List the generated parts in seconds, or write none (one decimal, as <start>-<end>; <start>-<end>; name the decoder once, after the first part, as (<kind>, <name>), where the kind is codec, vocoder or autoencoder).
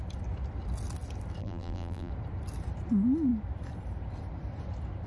1.4-2.1 (vocoder, BigVGAN v2)